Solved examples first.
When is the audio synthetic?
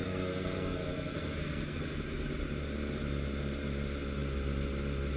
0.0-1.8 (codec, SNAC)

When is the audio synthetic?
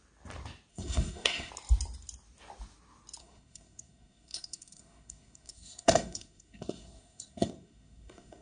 0.7-1.5 (codec, SNAC); 3.2-8.4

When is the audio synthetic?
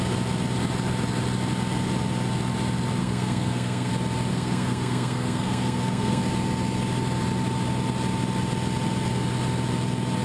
3.0-3.9 (codec, SNAC); 4.3-6.2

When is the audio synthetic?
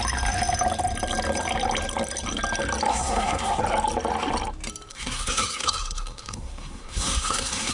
2.9-3.6 (codec, SNAC); 4.9-7.7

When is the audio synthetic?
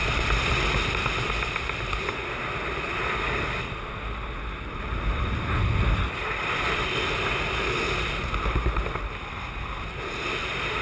none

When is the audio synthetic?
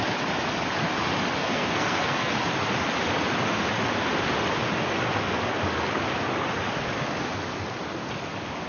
1.4-2.3 (codec, SNAC)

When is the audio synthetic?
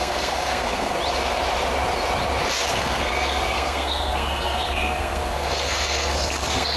0.0-1.0 (codec, SNAC); 2.7-6.8